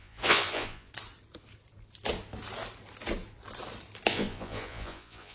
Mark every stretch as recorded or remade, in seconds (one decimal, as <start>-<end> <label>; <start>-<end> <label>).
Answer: 0.0-0.9 remade; 0.9-4.1 recorded; 4.1-5.3 remade